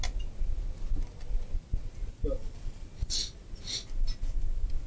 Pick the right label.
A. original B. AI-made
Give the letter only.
A